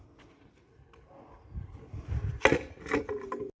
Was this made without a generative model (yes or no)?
yes